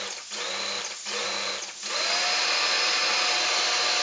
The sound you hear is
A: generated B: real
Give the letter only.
B